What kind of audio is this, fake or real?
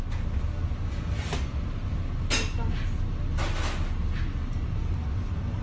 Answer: real